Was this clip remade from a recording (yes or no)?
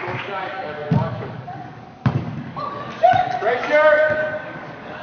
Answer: yes